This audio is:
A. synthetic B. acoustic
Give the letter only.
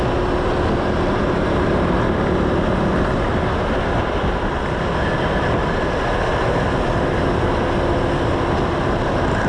B